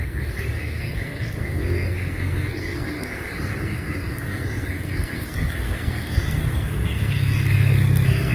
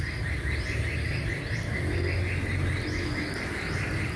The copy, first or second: first